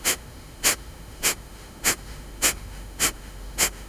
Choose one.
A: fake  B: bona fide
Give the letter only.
A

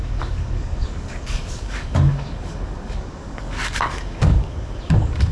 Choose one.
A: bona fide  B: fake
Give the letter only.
B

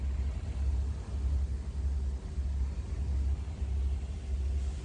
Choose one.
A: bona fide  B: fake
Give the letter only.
A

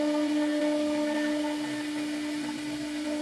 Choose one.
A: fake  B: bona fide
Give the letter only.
B